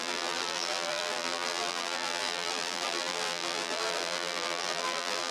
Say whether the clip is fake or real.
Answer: fake